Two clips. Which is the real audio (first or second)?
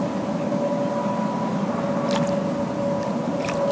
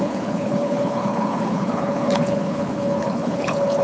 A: first